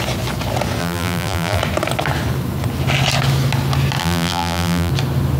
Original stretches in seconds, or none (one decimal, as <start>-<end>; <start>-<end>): 0.0-0.8; 1.6-4.0; 4.9-5.4